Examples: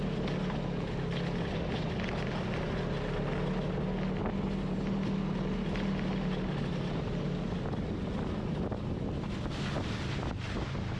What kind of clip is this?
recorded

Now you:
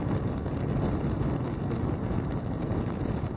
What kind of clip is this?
recorded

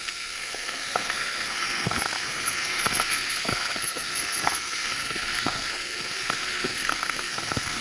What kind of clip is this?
remade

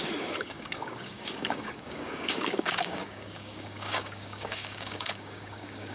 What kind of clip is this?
remade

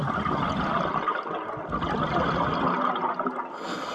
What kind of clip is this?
recorded